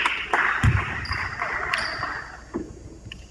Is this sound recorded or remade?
recorded